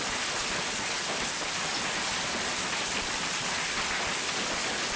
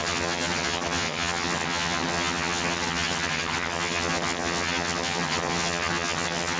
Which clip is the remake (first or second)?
second